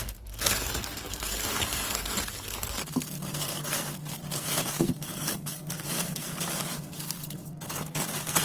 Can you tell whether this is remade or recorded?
remade